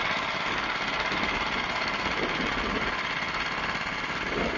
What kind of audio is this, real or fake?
real